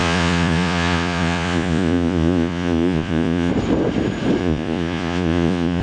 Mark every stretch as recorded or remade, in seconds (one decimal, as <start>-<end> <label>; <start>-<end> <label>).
0.0-3.5 remade; 3.5-4.4 recorded; 4.4-5.8 remade